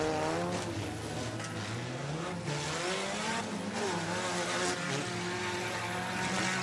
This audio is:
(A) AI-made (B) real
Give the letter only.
B